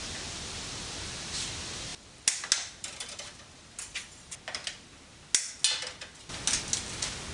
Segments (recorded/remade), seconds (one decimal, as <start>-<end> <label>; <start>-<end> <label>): 0.0-7.3 recorded

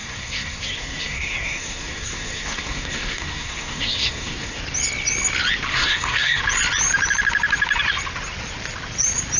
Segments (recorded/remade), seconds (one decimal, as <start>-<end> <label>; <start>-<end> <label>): 0.0-4.6 remade; 4.6-5.7 recorded; 5.7-6.4 remade; 6.4-9.4 recorded

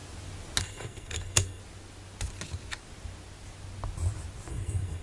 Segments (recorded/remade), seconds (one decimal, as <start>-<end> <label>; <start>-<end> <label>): 0.0-0.6 recorded; 0.6-1.6 remade; 1.6-4.5 recorded; 4.5-5.0 remade